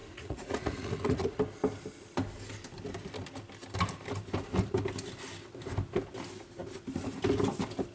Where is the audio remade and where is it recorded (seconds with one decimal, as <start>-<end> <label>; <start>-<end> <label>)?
0.0-1.4 remade; 1.4-7.9 recorded